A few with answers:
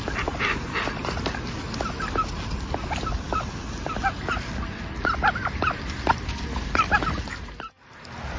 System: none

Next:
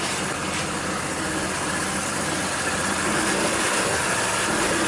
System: none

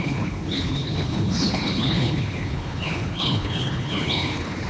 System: codec, HILCodec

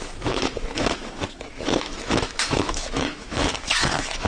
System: autoencoder, DAC-VAE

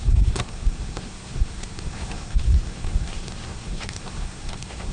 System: codec, SNAC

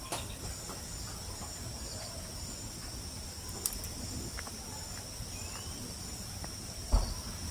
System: none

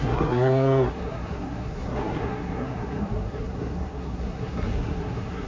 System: codec, SNAC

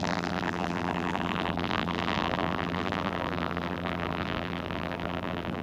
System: vocoder, BigVGAN v2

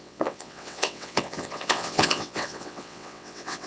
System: vocoder, WaveNeXt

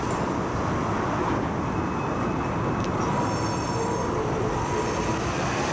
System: none